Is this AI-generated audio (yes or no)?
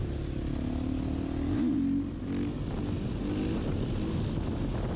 no